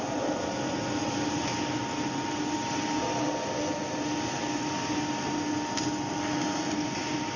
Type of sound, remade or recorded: recorded